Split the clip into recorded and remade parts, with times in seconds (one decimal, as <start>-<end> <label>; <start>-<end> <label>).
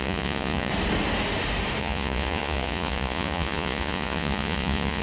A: 0.0-0.7 remade; 0.7-1.8 recorded; 1.8-5.0 remade